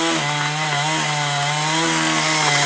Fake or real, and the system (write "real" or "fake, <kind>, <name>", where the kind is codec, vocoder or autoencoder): real